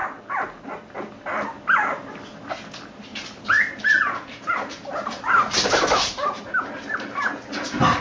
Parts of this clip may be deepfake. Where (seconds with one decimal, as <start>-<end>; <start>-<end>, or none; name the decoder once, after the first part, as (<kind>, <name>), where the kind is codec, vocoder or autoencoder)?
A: 3.1-6.4 (vocoder, BigVGAN v2)